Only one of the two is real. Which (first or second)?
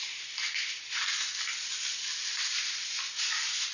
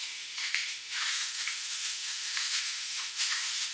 first